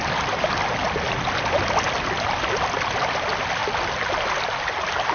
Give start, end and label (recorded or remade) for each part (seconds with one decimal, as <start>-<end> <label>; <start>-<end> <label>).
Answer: 0.0-5.1 recorded